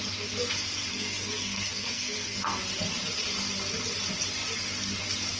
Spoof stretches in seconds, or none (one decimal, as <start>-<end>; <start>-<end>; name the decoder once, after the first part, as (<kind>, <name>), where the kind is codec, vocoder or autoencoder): 0.9-2.6 (codec, SNAC)